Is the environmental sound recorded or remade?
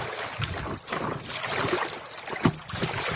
recorded